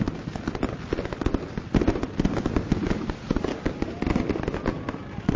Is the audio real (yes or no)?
yes